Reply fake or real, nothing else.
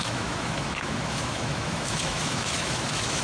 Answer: fake